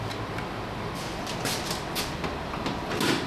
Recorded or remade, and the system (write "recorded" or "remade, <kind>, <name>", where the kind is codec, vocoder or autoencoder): recorded